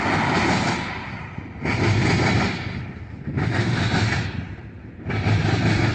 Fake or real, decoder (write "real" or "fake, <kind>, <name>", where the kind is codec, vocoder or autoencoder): real